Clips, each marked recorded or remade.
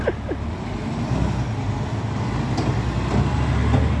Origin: recorded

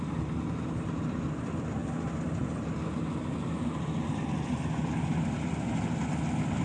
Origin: recorded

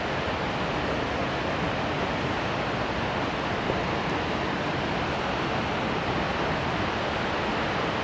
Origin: recorded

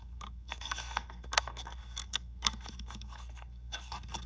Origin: remade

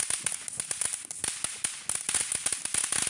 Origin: recorded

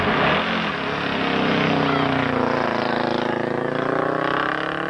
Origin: recorded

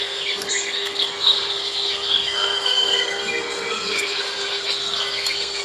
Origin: remade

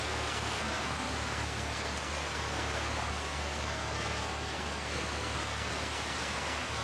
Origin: remade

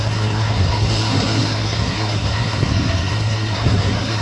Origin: remade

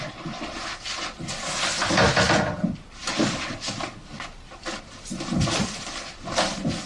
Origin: recorded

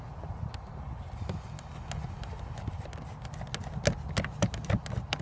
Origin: recorded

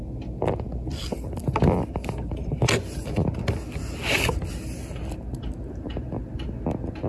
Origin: recorded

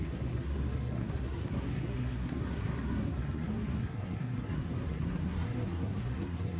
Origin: remade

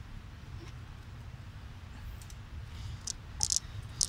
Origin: recorded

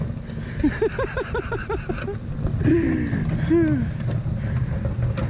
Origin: recorded